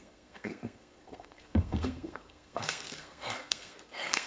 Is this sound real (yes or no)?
no